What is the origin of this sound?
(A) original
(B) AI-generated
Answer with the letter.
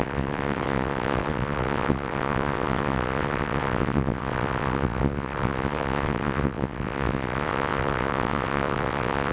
B